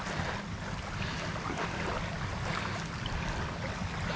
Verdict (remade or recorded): recorded